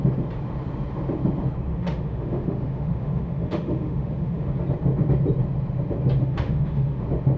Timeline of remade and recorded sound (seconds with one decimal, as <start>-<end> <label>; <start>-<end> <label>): 0.0-1.7 recorded; 1.7-4.5 remade; 4.5-6.2 recorded; 6.2-7.0 remade; 7.0-7.4 recorded